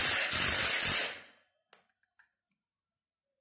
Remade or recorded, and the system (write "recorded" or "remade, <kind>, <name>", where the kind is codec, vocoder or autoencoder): recorded